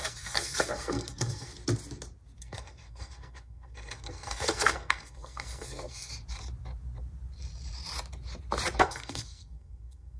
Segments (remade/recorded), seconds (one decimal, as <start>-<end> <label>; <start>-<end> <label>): 0.0-1.5 remade; 1.5-2.4 recorded; 2.4-6.1 remade; 6.1-8.8 recorded; 8.8-10.2 remade